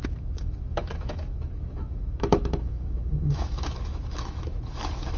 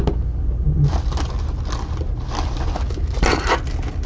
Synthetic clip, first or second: first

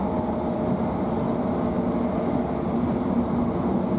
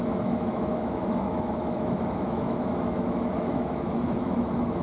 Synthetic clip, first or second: second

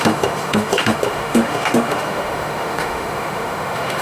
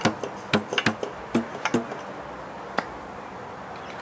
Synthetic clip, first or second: first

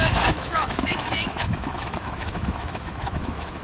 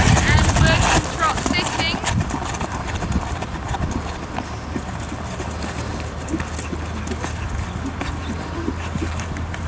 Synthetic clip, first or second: first